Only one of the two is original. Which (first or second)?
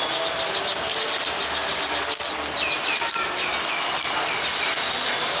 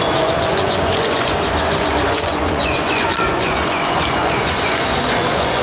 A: first